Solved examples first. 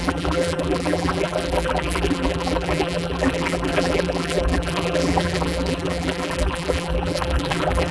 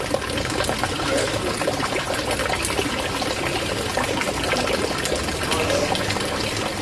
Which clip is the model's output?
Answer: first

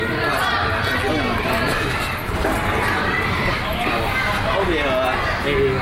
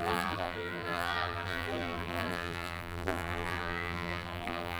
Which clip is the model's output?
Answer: second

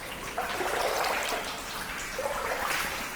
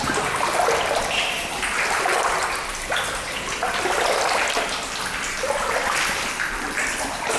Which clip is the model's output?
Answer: second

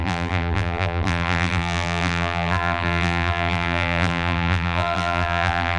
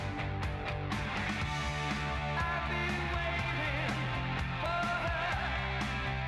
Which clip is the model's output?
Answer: first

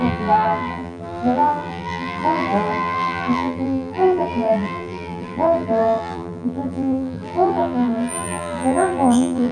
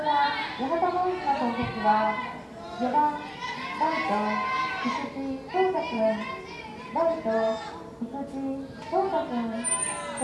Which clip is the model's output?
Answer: first